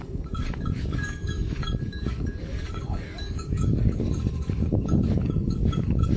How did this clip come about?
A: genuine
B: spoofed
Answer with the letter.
B